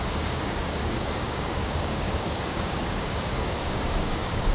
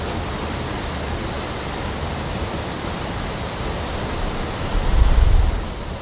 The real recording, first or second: second